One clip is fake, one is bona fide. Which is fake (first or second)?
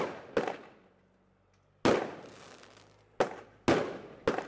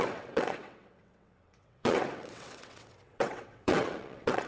second